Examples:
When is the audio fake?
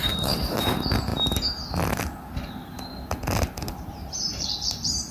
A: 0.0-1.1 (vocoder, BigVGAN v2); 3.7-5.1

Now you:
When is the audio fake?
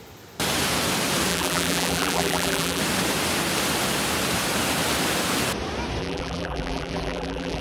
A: 1.3-2.8 (vocoder, BigVGAN v2); 6.0-7.6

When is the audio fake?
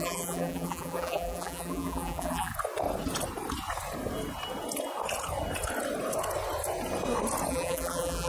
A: 0.0-2.5 (vocoder, BigVGAN v2); 7.5-8.3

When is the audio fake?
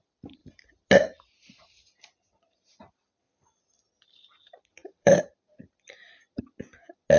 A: 4.8-6.4 (vocoder, BigVGAN v2)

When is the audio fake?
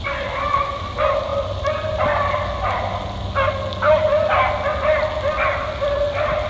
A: none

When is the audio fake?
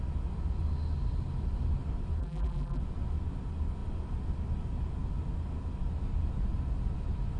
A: 2.2-2.8 (vocoder, BigVGAN v2)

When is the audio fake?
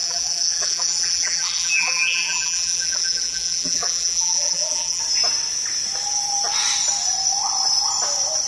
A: 0.0-5.0 (vocoder, BigVGAN v2)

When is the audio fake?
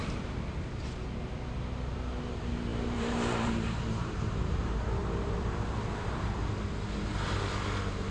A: 2.7-4.6 (vocoder, BigVGAN v2)